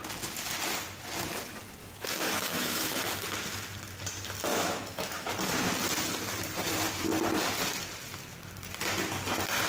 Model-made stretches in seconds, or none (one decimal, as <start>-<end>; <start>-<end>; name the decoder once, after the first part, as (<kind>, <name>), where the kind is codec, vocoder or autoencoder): 1.8-3.0 (autoencoder, DAC-VAE); 4.5-5.3